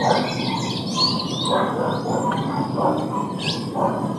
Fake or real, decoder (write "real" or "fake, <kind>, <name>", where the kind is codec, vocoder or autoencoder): real